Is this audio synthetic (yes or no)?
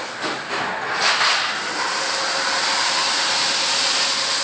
no